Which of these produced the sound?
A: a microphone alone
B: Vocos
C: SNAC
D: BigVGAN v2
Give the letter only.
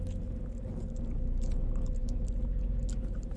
A